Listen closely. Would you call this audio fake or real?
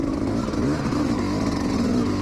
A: real